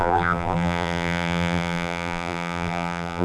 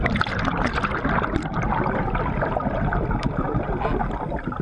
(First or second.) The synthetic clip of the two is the first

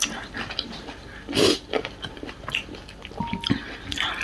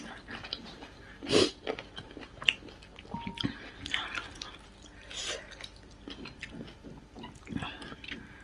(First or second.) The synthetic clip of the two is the first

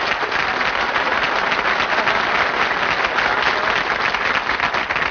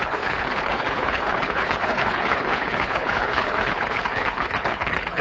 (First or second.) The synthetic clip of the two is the second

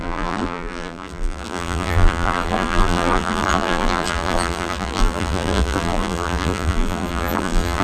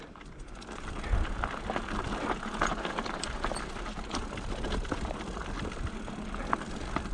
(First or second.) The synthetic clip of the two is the first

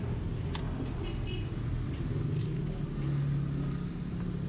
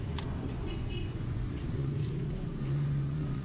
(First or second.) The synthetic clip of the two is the second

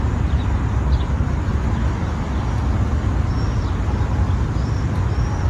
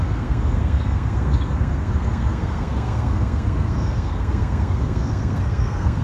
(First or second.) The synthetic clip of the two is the second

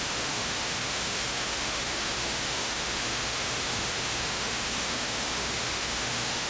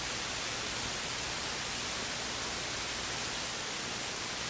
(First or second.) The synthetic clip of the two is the first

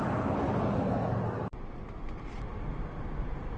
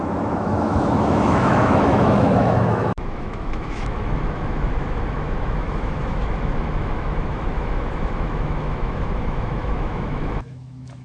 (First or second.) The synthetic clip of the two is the second